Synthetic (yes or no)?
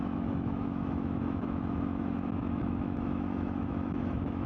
yes